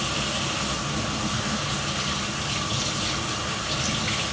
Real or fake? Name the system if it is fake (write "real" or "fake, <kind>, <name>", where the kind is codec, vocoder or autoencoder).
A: real